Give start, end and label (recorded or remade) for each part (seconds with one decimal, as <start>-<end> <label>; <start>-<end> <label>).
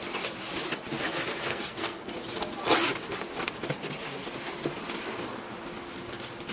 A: 0.0-1.5 recorded; 1.5-2.1 remade; 2.1-6.5 recorded